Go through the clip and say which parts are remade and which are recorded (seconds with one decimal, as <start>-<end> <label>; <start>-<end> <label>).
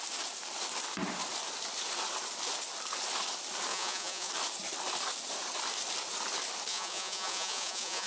0.0-3.7 recorded; 3.7-4.3 remade; 4.3-6.7 recorded; 6.7-8.1 remade